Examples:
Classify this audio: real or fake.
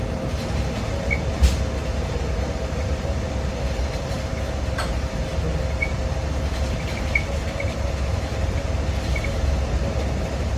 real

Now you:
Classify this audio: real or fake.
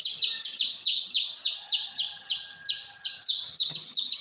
fake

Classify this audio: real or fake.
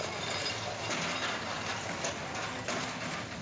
real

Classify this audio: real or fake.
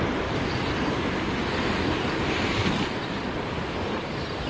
real